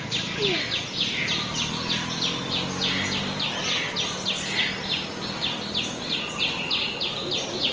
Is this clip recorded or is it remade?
recorded